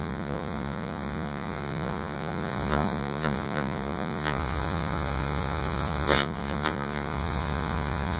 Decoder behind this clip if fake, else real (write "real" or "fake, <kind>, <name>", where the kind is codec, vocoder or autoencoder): fake, vocoder, Vocos